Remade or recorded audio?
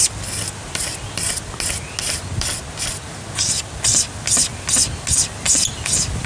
recorded